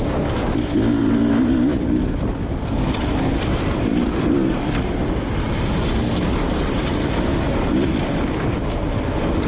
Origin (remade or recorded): recorded